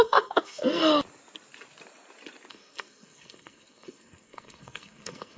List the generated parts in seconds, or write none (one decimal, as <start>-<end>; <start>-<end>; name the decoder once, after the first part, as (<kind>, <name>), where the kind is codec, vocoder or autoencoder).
0.0-0.8 (codec, SNAC); 2.5-5.4